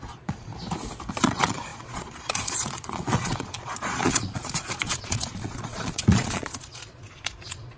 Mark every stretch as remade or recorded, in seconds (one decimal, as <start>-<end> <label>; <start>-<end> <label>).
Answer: 0.0-0.5 remade; 0.5-1.1 recorded; 1.1-7.8 remade